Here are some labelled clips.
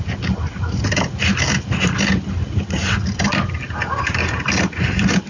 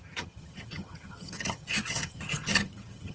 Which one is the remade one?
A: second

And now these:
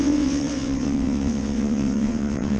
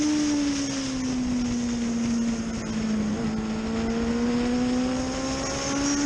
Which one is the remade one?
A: first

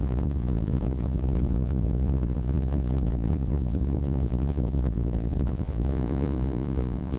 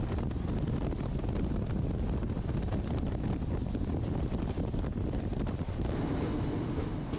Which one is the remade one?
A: first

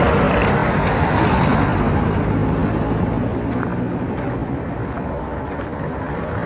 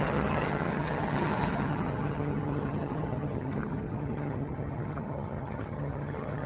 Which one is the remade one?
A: second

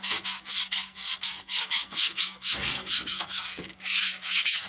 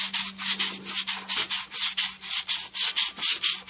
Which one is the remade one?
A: first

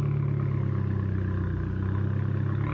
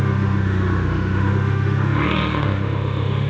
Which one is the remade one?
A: second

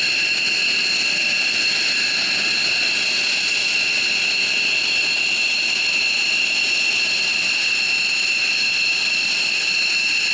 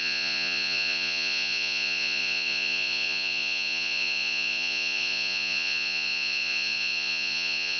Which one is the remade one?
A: second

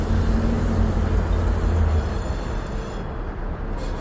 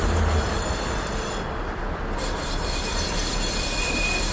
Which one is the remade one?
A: second